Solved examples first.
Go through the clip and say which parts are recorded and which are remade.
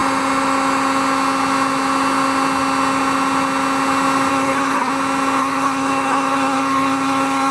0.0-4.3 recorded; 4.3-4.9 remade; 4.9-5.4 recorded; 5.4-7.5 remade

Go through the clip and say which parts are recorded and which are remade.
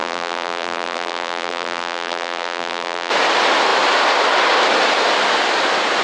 0.0-3.1 remade; 3.1-6.0 recorded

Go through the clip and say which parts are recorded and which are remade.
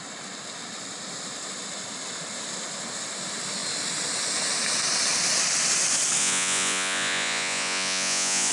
0.0-6.2 recorded; 6.2-8.5 remade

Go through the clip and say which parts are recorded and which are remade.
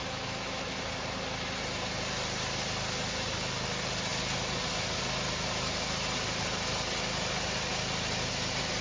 0.0-0.8 remade; 0.8-8.8 recorded